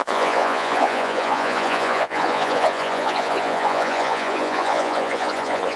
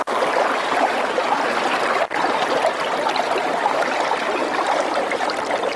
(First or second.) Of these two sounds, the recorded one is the second